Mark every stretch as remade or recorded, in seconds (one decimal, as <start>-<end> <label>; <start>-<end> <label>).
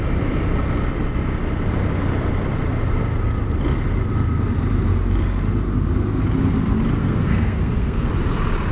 0.0-7.0 recorded; 7.0-8.1 remade; 8.1-8.7 recorded